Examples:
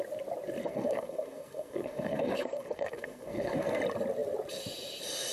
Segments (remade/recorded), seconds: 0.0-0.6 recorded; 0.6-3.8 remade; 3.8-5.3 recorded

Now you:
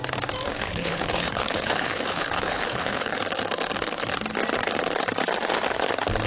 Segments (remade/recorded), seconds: 0.0-0.5 recorded; 0.5-3.2 remade; 3.2-6.3 recorded